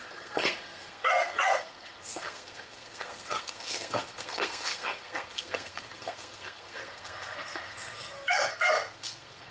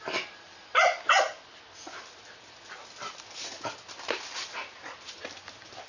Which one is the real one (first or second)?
second